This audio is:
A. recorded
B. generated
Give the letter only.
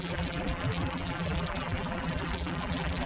B